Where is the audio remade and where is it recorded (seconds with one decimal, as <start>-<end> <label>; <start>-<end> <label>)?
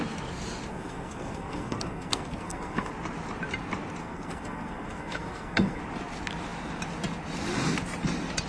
0.0-0.7 recorded; 0.7-2.9 remade; 2.9-4.0 recorded; 4.0-5.8 remade; 5.8-8.5 recorded